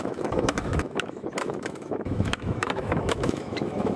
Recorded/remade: remade